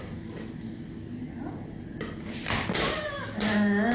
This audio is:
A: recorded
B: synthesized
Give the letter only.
A